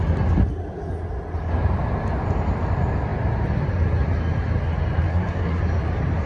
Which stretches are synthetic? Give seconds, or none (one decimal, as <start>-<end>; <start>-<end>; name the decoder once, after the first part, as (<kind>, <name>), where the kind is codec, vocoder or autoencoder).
5.1-5.6 (codec, SNAC)